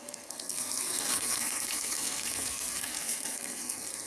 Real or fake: fake